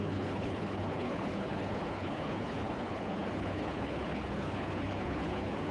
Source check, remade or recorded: remade